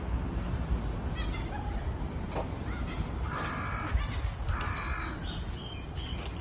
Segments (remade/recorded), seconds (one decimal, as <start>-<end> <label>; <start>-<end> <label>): 0.0-6.4 recorded